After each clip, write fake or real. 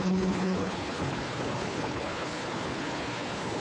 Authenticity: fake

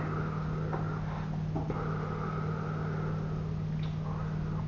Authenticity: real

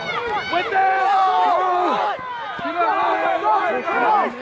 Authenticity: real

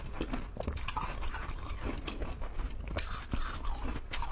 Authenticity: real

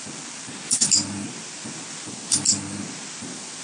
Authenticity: real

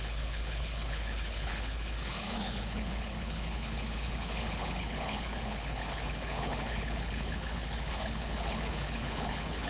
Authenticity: fake